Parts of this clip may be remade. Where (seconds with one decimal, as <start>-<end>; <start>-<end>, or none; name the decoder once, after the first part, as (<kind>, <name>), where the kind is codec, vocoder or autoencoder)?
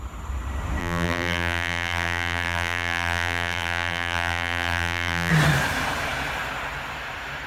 0.8-5.3 (vocoder, BigVGAN v2)